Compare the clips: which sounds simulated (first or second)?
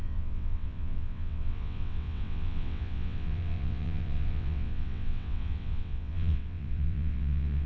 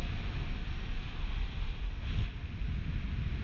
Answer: first